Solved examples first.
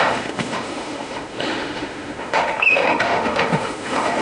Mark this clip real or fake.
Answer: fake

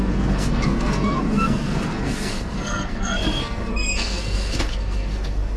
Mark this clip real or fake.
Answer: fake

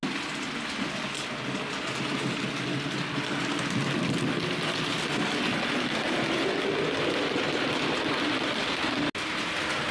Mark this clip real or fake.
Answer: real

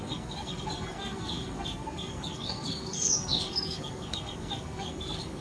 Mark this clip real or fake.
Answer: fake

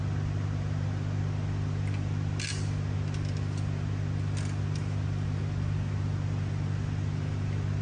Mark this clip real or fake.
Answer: real